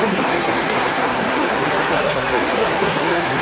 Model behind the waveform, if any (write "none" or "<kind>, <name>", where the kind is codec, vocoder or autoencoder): codec, SNAC